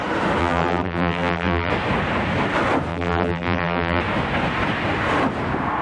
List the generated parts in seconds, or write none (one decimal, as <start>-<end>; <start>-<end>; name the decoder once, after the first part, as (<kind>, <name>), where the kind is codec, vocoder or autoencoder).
0.4-1.7 (vocoder, BigVGAN v2); 2.9-4.0